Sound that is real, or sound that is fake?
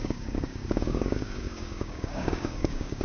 fake